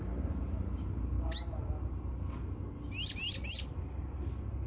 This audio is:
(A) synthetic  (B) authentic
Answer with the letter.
B